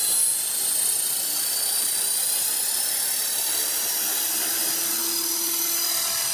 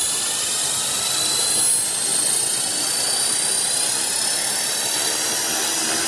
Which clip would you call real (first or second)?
second